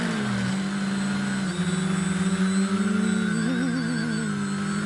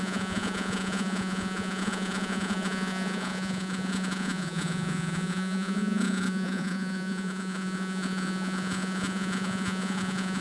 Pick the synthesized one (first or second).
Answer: second